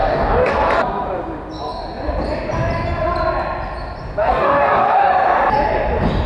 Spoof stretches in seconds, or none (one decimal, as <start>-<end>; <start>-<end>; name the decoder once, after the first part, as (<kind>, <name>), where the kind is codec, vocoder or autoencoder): 0.0-0.5 (codec, DAC); 4.2-5.1